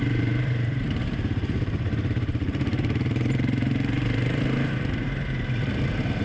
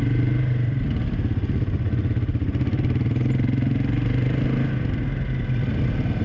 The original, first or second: second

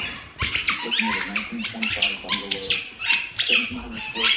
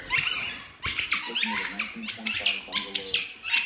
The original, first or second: second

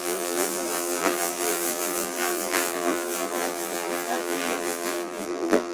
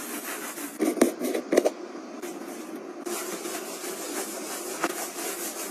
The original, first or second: second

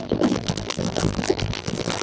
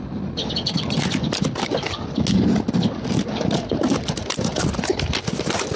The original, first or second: second